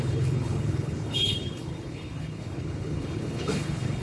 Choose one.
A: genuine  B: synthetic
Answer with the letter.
B